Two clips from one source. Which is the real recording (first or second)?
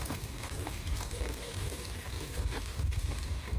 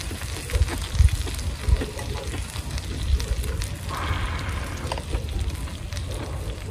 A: second